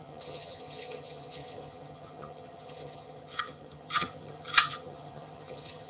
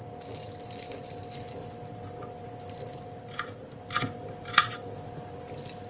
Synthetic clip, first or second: first